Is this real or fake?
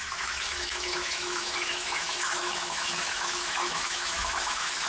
fake